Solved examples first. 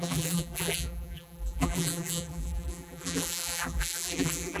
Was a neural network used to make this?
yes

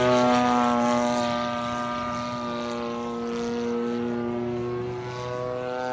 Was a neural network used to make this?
no